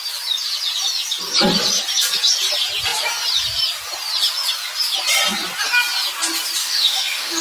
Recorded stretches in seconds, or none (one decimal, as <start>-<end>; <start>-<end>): 0.0-6.6